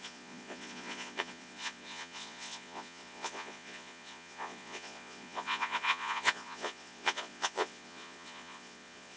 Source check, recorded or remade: remade